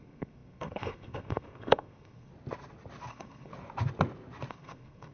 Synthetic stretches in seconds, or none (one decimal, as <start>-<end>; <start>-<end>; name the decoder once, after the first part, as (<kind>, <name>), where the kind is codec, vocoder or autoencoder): 0.0-2.3 (codec, SNAC); 3.1-3.5; 4.5-5.1